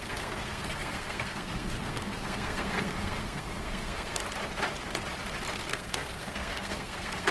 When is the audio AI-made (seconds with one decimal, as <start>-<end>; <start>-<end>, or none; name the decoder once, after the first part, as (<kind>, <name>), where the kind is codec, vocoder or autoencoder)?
0.0-4.2 (codec, SNAC); 5.7-7.3